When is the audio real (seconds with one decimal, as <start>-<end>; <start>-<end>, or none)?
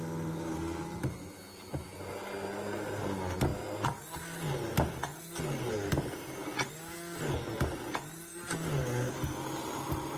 0.0-10.2